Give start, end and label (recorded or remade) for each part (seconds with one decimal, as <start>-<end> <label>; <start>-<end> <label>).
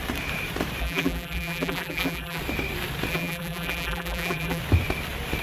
0.0-0.8 recorded; 0.8-2.4 remade; 2.4-3.1 recorded; 3.1-4.6 remade; 4.6-5.4 recorded